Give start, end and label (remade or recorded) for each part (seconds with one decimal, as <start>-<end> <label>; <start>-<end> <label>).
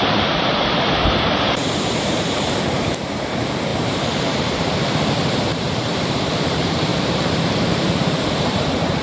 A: 0.0-9.0 remade